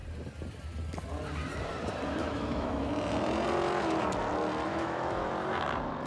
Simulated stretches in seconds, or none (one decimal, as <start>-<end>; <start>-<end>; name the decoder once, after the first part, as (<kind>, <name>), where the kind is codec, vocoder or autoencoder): 2.2-2.9 (autoencoder, DAC-VAE); 4.7-5.3